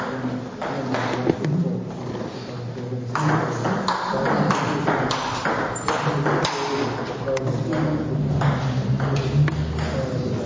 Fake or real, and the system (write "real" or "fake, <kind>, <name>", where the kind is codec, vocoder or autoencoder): real